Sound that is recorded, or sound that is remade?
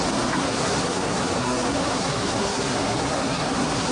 remade